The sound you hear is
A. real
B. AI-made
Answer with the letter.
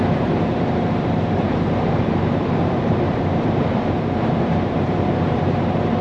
B